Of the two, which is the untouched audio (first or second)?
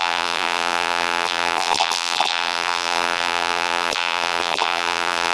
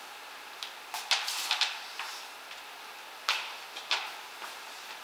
second